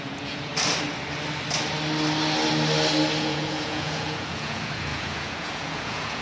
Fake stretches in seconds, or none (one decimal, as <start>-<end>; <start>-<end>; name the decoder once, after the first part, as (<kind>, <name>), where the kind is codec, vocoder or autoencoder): 0.0-0.5 (vocoder, Vocos); 3.2-6.2